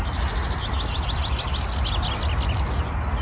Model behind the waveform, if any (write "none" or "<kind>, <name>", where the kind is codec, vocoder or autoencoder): none